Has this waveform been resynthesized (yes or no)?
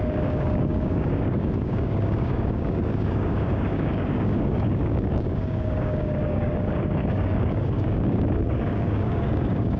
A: yes